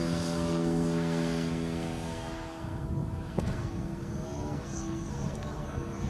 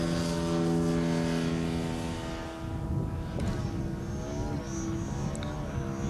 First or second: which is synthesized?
first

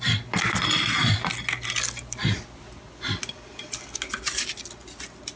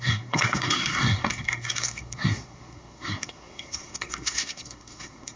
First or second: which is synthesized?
second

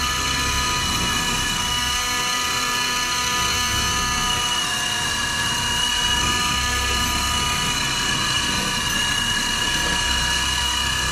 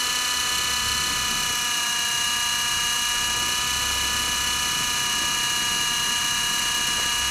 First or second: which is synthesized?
first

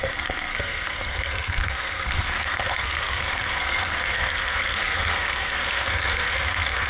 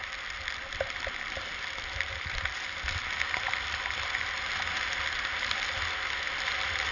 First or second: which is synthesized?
first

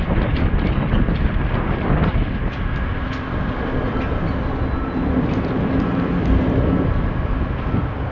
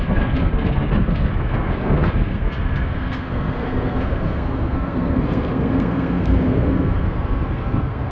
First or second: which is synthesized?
second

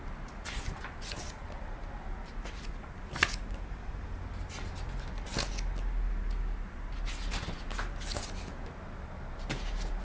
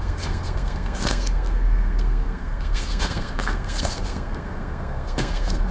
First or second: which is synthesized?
second